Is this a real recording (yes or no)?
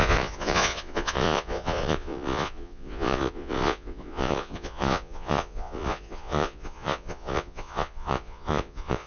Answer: no